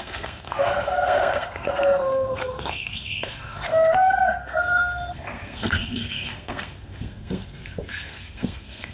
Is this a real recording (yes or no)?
no